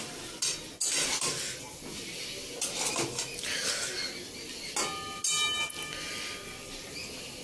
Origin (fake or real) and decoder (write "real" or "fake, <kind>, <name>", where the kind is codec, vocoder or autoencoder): real